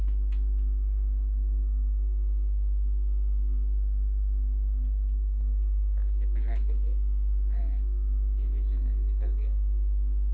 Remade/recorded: remade